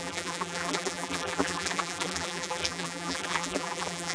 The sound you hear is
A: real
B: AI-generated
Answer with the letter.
B